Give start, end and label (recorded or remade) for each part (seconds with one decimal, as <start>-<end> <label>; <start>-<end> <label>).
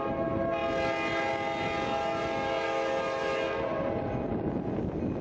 0.0-5.2 recorded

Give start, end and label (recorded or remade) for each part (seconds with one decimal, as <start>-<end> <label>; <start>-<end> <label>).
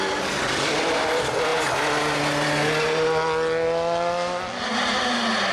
0.0-5.5 recorded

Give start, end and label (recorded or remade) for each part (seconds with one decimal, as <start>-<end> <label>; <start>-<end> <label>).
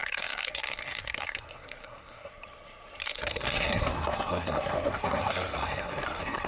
0.0-2.3 remade; 2.3-3.0 recorded; 3.0-6.5 remade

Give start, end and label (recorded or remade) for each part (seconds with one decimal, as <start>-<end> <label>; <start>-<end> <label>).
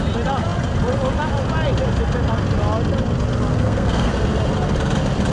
0.0-3.5 recorded; 3.5-4.1 remade; 4.1-5.3 recorded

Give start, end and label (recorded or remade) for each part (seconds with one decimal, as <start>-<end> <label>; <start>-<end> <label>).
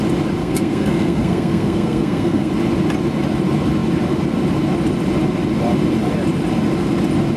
0.0-0.4 recorded; 0.4-2.5 remade; 2.5-7.4 recorded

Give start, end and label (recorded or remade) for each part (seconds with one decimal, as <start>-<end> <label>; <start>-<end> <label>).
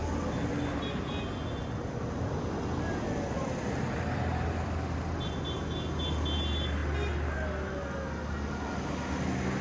0.0-9.6 recorded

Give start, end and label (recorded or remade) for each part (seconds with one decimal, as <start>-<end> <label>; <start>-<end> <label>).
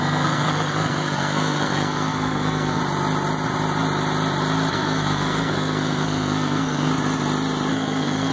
0.0-2.8 remade; 2.8-4.7 recorded; 4.7-6.9 remade; 6.9-7.7 recorded; 7.7-8.3 remade